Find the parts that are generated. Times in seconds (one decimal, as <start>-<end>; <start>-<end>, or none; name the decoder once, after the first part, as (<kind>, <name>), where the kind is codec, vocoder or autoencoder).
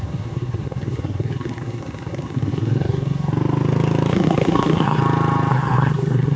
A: 0.0-3.3 (codec, SNAC); 4.1-5.0; 5.5-6.4